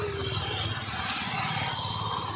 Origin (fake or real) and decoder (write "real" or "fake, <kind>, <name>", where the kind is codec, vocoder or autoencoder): real